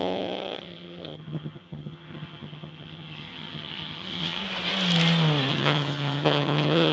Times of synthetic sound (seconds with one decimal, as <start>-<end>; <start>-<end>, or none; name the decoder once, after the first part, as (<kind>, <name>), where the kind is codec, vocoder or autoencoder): 0.0-4.4 (vocoder, HiFi-GAN); 5.5-6.9